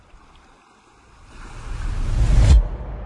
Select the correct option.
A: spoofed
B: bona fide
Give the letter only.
B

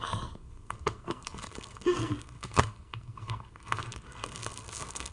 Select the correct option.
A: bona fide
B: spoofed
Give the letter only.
B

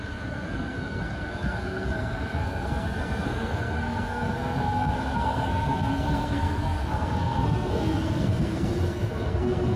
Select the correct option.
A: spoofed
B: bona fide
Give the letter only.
A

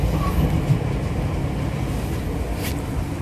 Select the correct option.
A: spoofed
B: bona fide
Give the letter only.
B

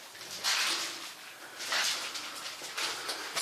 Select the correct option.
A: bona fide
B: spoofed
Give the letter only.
A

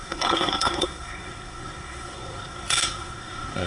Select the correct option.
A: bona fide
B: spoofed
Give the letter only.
B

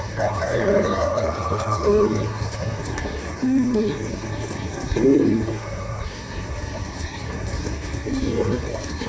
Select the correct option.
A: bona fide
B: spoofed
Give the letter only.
B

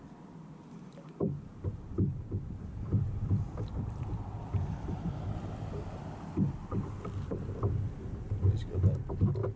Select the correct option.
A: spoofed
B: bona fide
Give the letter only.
B